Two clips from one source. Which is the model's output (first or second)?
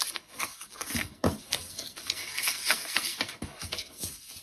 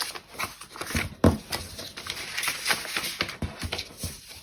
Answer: first